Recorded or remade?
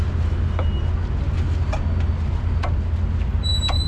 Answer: recorded